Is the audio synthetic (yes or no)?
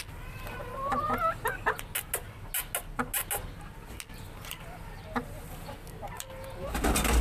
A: no